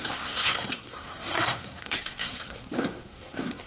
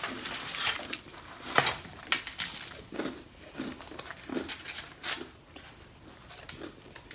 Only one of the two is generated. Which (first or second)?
first